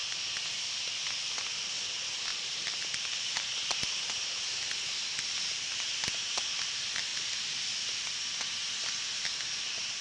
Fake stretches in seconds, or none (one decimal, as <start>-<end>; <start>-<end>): 2.3-5.0; 7.1-7.8